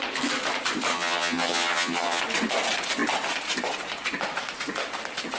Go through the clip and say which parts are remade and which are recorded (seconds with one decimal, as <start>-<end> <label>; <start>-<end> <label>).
0.0-0.9 recorded; 0.9-2.2 remade; 2.2-5.4 recorded